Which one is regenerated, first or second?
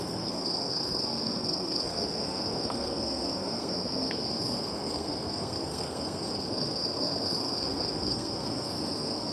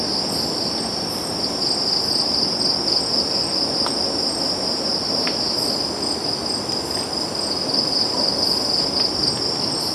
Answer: first